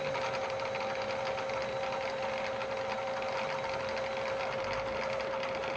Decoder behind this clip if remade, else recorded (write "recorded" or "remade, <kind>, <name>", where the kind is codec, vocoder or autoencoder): recorded